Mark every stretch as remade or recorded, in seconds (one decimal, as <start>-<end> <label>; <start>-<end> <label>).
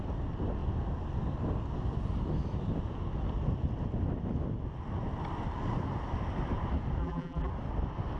0.0-7.0 recorded; 7.0-7.5 remade; 7.5-8.2 recorded